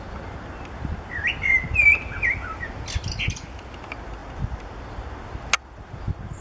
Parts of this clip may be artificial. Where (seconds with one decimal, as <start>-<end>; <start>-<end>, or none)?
none